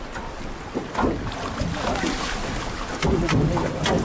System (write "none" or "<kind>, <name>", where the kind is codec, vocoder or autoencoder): none